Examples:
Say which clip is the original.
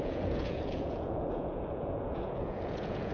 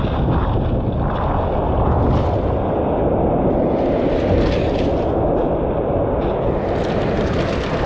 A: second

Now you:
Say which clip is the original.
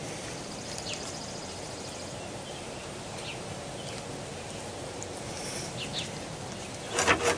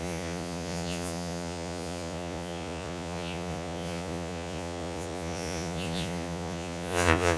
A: first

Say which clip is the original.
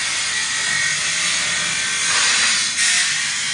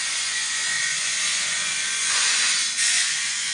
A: first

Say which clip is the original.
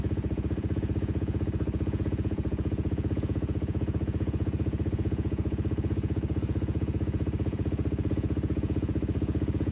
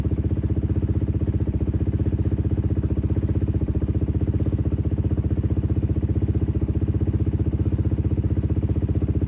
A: second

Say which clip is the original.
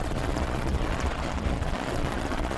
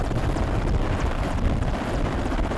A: second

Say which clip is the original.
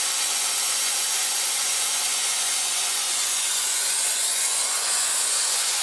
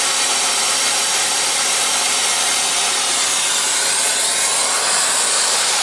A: second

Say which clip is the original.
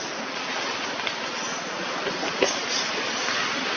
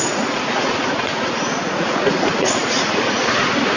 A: first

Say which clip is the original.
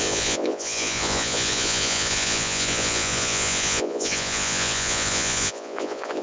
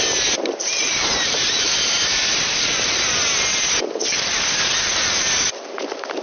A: second